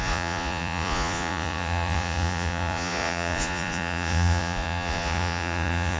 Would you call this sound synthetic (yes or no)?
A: yes